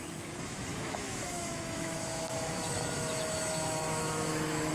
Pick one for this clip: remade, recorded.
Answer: remade